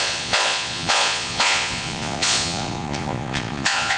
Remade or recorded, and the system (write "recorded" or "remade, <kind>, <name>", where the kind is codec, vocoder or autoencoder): remade, vocoder, Vocos